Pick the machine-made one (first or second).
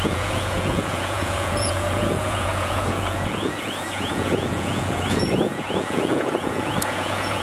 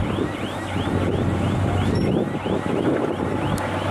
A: first